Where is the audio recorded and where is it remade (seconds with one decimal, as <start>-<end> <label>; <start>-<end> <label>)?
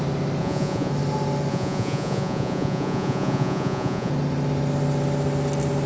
0.0-0.4 recorded; 0.4-0.9 remade; 0.9-1.5 recorded; 1.5-4.1 remade; 4.1-5.9 recorded